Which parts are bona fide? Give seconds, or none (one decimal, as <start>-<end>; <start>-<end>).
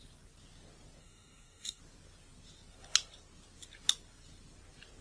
0.0-1.0; 1.8-5.0